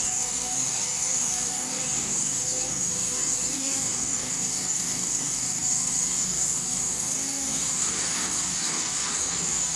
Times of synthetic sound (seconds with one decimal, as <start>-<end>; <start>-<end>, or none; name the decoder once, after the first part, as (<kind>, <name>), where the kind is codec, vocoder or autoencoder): 0.0-9.8 (codec, DAC)